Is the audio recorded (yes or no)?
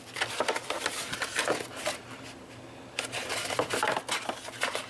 yes